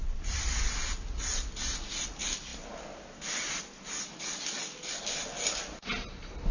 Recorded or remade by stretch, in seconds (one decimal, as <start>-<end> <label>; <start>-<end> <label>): 0.0-6.5 recorded